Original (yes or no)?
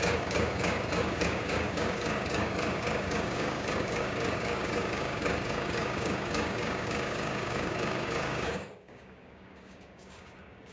no